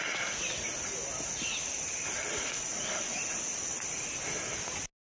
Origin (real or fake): real